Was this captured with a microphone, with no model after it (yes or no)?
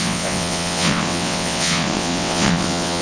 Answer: no